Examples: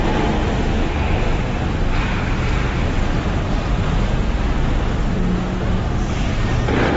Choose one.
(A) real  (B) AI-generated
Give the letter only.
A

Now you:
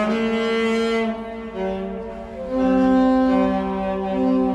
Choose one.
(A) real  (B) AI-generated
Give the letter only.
A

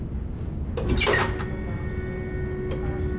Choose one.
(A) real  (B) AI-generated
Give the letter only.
A